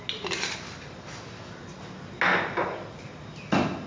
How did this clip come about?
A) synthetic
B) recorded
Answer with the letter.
B